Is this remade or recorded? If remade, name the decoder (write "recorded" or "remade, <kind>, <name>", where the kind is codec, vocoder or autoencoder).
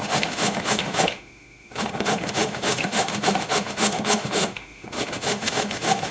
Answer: remade, autoencoder, DAC-VAE